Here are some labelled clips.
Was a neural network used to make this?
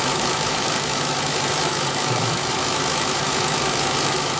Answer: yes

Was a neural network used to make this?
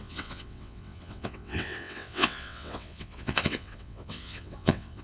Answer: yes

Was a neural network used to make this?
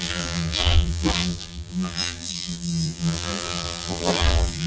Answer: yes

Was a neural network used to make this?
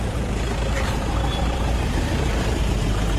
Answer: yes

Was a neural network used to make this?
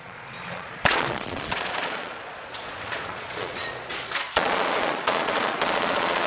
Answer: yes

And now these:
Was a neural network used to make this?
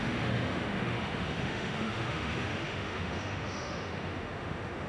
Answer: yes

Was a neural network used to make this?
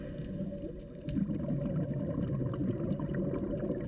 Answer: no